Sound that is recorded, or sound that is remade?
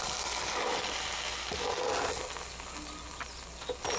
recorded